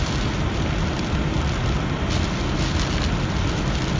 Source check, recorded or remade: recorded